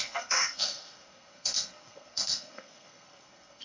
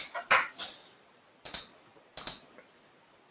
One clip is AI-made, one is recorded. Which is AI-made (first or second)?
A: first